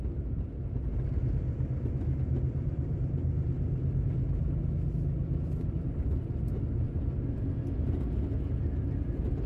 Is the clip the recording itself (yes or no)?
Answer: yes